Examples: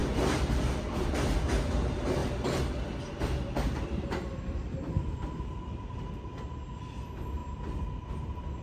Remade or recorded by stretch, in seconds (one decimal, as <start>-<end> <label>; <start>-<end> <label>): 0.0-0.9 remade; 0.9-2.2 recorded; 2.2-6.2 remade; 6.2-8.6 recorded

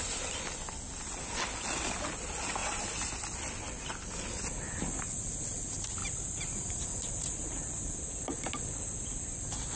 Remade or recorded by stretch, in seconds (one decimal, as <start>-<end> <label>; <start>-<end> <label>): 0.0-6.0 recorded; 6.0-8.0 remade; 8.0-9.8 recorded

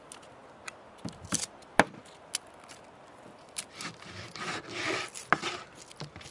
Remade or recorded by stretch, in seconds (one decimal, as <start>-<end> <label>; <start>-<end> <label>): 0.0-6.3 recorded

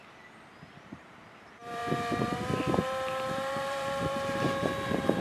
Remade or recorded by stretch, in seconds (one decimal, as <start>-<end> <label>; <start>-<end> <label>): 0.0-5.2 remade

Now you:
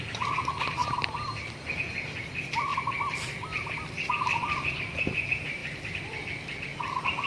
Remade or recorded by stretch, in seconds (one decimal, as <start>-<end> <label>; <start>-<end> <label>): 0.0-0.8 recorded; 0.8-1.8 remade; 1.8-2.7 recorded; 2.7-4.1 remade; 4.1-5.6 recorded; 5.6-6.8 remade; 6.8-7.3 recorded